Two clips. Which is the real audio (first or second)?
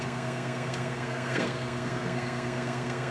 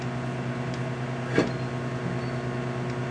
second